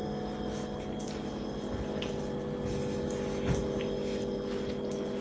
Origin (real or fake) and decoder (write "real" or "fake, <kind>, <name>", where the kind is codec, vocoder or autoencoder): real